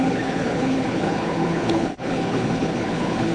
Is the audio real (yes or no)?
no